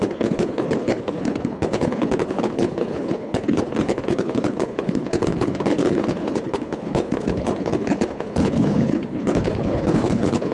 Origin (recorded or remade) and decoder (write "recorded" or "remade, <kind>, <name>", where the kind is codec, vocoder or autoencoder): remade, codec, HILCodec